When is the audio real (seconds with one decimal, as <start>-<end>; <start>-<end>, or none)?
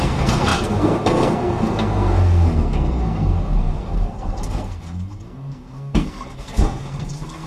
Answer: none